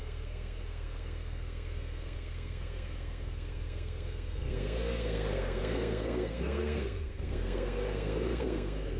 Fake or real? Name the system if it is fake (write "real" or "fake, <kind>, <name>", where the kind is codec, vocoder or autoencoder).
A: fake, codec, SNAC